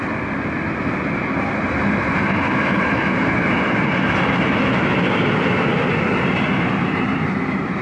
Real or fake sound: real